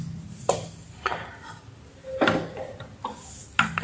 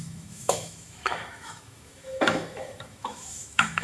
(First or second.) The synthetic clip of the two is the second